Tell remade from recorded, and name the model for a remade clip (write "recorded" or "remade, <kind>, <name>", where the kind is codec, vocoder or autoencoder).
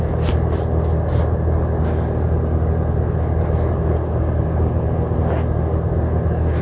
recorded